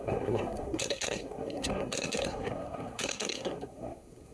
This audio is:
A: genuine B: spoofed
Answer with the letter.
B